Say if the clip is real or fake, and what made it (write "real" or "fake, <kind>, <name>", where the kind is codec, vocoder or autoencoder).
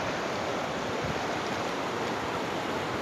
real